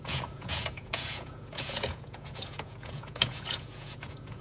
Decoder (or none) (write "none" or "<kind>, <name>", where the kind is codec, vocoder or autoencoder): vocoder, Vocos